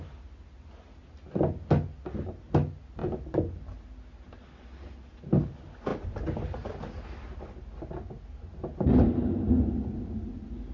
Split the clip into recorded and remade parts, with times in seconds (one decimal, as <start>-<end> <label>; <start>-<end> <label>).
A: 0.0-5.9 recorded; 5.9-6.8 remade; 6.8-10.7 recorded